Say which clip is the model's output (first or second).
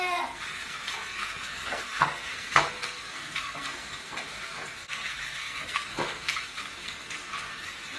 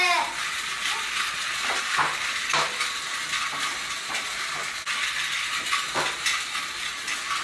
first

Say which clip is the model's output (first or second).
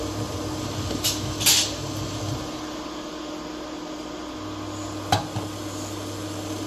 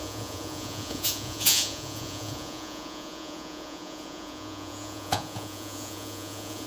second